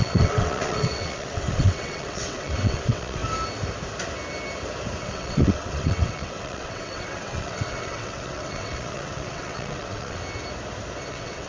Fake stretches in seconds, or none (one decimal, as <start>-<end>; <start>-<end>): 0.0-3.2; 5.0-10.2; 11.1-11.5